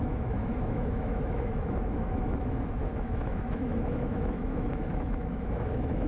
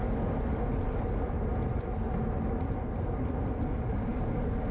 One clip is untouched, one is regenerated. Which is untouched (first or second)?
second